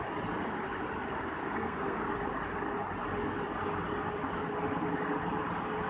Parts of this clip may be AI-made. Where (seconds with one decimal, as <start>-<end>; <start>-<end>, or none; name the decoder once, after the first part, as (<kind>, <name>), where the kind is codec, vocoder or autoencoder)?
1.4-2.1 (codec, SNAC)